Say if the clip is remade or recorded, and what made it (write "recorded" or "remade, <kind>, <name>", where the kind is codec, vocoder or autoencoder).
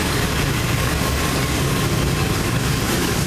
remade, codec, DAC